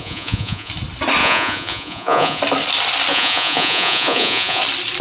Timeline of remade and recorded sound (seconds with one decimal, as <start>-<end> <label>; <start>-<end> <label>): 0.0-0.7 remade; 0.7-1.2 recorded; 1.2-2.4 remade; 2.4-3.1 recorded; 3.1-4.6 remade; 4.6-5.0 recorded